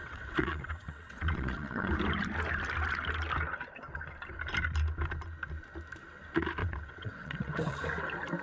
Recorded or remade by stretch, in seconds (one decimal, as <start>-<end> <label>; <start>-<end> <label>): 0.0-1.9 remade; 1.9-6.6 recorded; 6.6-7.8 remade; 7.8-8.4 recorded